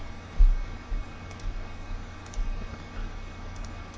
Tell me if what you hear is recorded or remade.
remade